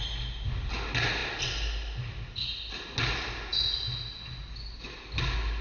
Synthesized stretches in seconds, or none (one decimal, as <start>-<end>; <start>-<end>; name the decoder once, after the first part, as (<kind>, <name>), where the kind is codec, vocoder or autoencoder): none